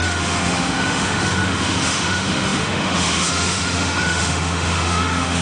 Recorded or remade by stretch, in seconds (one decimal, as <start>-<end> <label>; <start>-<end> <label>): 0.0-5.4 remade

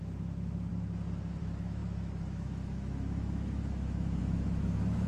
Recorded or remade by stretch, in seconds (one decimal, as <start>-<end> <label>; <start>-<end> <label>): 0.0-0.7 remade; 0.7-1.4 recorded; 1.4-5.1 remade